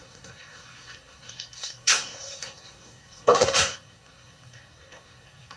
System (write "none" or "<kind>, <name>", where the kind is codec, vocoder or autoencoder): codec, SNAC